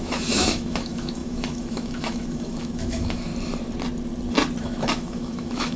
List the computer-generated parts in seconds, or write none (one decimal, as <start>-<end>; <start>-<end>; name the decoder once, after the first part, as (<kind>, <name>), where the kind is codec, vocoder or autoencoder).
0.0-3.3 (autoencoder, DAC-VAE); 4.6-5.8